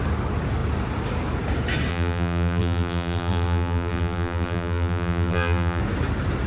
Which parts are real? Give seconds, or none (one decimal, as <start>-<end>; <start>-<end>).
0.0-1.9; 5.8-6.5